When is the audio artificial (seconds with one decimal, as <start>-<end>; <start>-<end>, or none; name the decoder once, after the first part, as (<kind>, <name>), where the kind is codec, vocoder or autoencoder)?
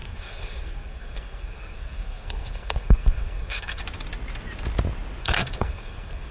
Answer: 0.0-3.8 (codec, SNAC); 5.2-6.3